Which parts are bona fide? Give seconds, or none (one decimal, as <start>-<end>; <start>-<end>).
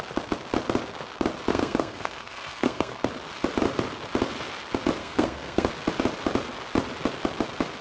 0.0-1.5; 3.1-5.0; 5.7-7.8